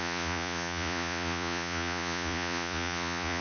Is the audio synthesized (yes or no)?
yes